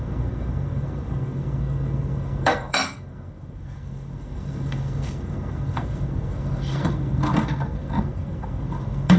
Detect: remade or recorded remade